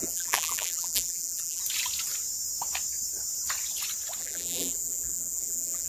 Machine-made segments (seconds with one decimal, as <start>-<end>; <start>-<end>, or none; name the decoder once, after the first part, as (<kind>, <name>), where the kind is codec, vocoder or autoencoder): 0.0-1.6 (vocoder, BigVGAN v2); 4.2-5.9